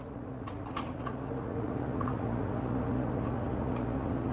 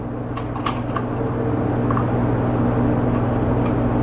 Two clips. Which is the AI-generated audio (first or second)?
first